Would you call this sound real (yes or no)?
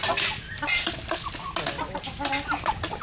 yes